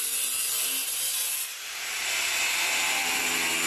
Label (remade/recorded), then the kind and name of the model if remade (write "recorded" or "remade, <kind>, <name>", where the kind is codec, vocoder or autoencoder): recorded